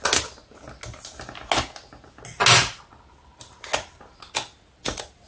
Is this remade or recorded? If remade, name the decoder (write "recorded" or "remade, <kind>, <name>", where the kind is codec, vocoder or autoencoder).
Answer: recorded